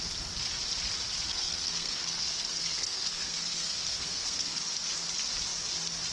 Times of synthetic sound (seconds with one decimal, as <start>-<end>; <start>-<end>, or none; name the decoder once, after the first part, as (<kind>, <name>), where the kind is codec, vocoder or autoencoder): 1.3-4.6 (codec, SNAC)